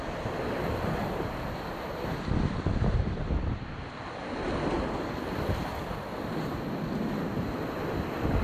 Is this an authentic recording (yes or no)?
yes